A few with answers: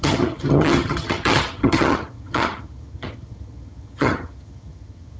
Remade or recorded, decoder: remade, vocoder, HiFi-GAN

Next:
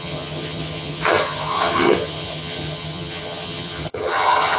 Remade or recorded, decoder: remade, vocoder, HiFi-GAN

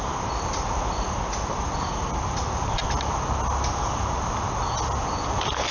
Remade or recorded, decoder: recorded